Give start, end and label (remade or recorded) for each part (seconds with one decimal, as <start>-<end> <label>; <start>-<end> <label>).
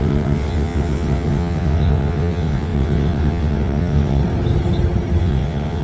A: 0.0-4.2 remade; 4.2-5.2 recorded; 5.2-5.8 remade